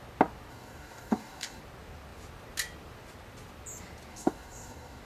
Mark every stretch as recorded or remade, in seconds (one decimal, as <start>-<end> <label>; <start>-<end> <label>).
0.0-0.5 recorded; 0.5-1.6 remade; 1.6-4.1 recorded; 4.1-5.0 remade

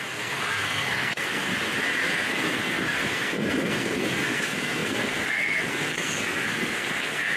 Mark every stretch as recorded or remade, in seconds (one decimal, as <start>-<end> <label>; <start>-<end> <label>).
0.0-1.5 remade; 1.5-2.1 recorded; 2.1-7.4 remade

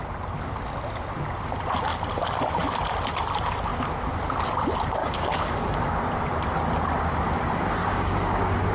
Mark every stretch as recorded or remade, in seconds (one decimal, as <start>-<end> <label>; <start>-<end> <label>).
0.0-5.0 recorded; 5.0-5.8 remade; 5.8-7.8 recorded; 7.8-8.7 remade

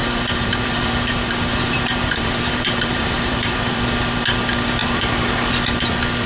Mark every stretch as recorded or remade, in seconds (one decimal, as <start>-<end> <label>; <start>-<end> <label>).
0.0-3.8 remade; 3.8-6.3 recorded